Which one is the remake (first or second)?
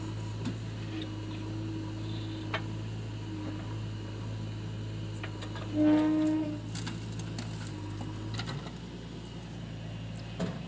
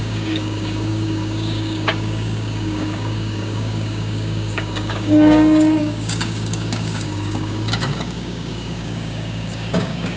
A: second